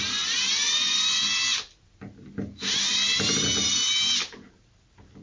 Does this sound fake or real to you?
real